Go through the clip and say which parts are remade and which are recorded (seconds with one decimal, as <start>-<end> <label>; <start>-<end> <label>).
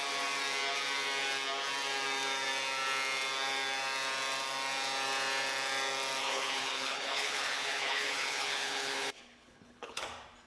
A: 0.0-6.2 recorded; 6.2-10.0 remade; 10.0-10.5 recorded